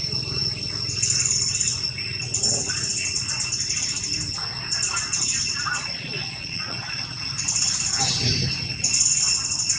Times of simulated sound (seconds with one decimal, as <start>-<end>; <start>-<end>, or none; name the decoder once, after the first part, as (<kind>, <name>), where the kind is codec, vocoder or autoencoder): 5.7-7.1 (vocoder, Vocos)